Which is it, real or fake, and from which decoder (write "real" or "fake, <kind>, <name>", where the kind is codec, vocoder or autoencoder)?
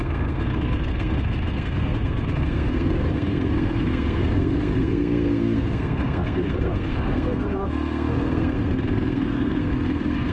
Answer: fake, codec, SNAC